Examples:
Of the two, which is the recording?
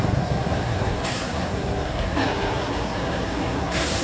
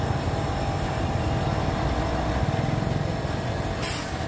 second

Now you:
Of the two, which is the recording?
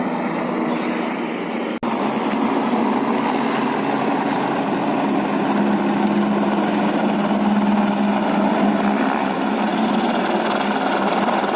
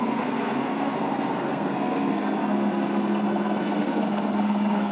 first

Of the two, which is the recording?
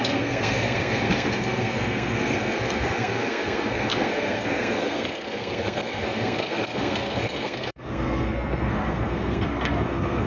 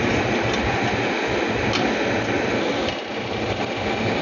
second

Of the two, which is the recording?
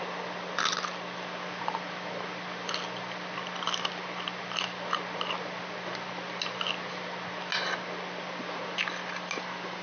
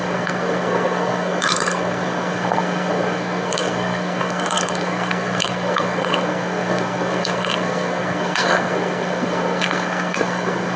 first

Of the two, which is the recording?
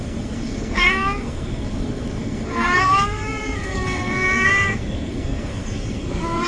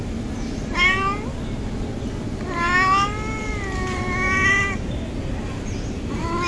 second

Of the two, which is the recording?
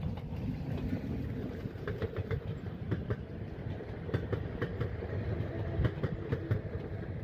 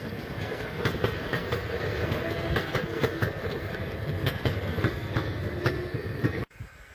first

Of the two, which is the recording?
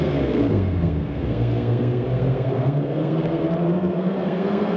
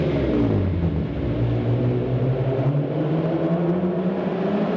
second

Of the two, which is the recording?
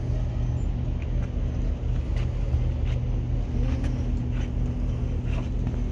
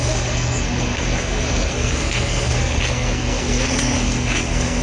first